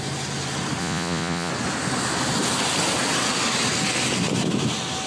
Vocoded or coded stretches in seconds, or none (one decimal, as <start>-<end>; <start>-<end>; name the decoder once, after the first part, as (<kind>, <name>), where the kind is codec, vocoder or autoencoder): 0.8-1.5 (vocoder, Vocos)